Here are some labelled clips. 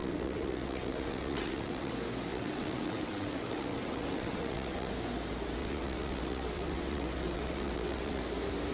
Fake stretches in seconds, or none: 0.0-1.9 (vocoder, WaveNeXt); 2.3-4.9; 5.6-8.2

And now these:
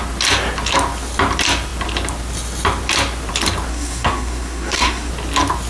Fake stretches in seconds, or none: 3.7-5.1 (codec, SNAC)